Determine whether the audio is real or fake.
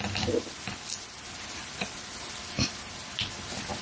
real